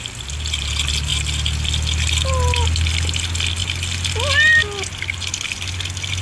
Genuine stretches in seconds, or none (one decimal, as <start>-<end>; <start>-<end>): 0.0-6.2